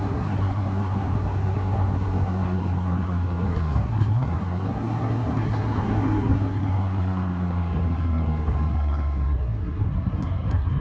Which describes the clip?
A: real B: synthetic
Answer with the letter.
B